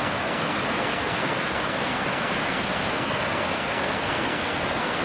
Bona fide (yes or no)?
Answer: no